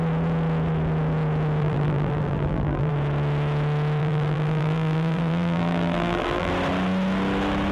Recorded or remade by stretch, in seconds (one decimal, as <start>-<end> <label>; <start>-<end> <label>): 0.0-1.6 recorded; 1.6-2.9 remade; 2.9-4.0 recorded; 4.0-6.5 remade; 6.5-7.7 recorded